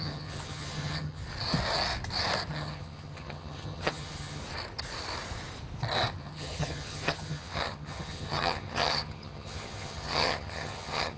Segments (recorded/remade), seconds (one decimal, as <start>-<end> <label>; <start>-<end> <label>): 0.0-1.2 remade; 1.2-2.5 recorded; 2.5-4.4 remade; 4.4-6.1 recorded; 6.1-11.2 remade

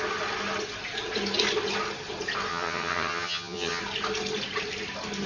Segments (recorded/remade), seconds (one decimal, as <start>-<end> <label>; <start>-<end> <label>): 0.0-2.5 recorded; 2.5-3.8 remade; 3.8-5.3 recorded

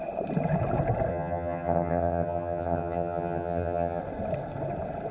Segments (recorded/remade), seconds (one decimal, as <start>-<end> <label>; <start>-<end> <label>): 0.0-1.1 recorded; 1.1-4.0 remade; 4.0-5.1 recorded

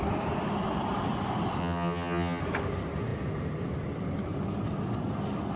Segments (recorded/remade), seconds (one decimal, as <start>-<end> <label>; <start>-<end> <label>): 0.0-1.6 recorded; 1.6-2.4 remade; 2.4-5.6 recorded

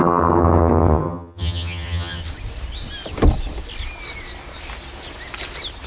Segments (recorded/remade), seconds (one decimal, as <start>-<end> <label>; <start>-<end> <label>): 0.0-2.2 remade; 2.2-5.9 recorded